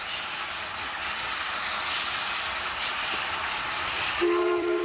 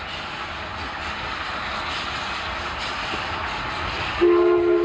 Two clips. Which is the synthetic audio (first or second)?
first